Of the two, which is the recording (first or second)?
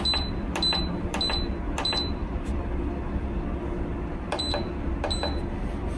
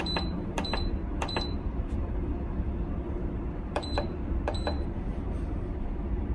first